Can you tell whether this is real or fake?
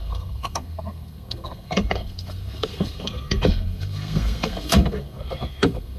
fake